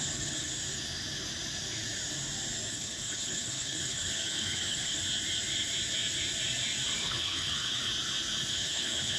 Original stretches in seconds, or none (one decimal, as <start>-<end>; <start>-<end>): 0.5-2.7; 5.0-7.0; 7.9-8.5